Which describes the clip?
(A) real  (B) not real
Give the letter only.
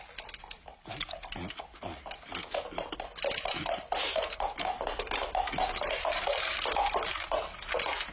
A